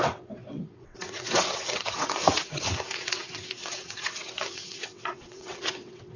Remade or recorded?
remade